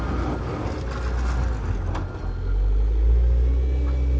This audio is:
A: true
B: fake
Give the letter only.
A